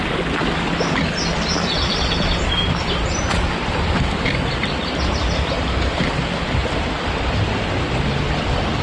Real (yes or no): yes